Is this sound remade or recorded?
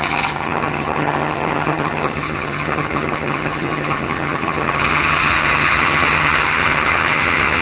remade